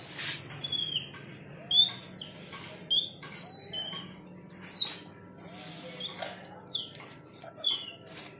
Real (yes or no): yes